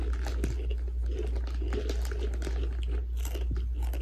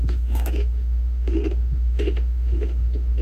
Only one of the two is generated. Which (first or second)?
second